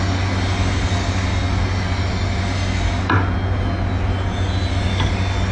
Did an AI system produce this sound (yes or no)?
no